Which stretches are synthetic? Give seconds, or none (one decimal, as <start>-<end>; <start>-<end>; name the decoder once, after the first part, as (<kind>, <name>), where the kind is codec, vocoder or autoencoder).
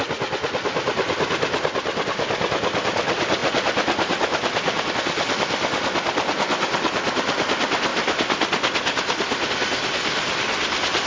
none